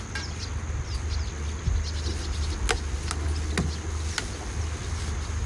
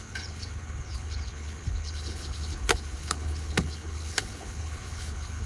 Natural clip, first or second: first